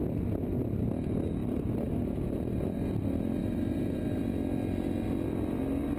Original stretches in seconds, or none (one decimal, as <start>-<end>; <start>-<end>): 0.0-1.4; 2.9-3.4; 4.2-6.0